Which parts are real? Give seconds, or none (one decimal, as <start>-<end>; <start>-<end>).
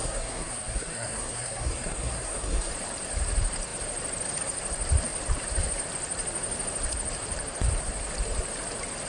2.7-9.1